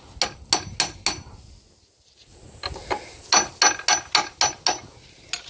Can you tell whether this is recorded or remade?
recorded